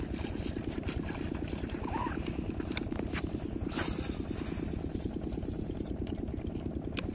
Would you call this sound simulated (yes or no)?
no